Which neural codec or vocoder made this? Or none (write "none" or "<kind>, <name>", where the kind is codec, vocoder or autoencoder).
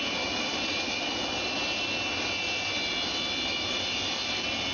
none